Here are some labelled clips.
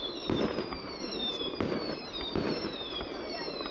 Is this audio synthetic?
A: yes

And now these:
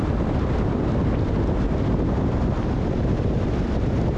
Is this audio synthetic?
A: no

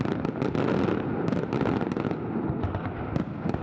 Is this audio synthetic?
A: yes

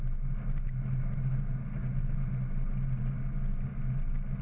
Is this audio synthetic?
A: no